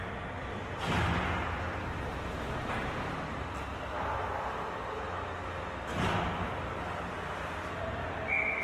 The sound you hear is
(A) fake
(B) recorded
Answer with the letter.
B